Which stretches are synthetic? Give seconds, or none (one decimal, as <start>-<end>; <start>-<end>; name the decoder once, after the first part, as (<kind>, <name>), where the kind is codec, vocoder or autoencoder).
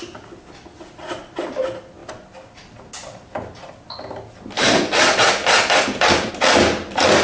none